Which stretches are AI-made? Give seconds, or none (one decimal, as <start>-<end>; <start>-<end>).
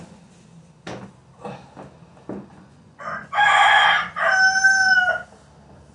2.5-4.2